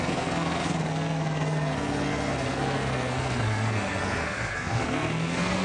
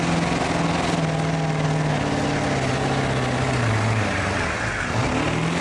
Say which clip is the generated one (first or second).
first